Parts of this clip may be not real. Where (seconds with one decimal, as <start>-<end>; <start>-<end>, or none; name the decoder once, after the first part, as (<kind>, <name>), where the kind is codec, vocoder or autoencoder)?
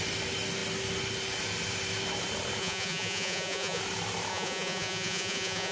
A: 2.6-3.8 (vocoder, Vocos); 4.3-5.7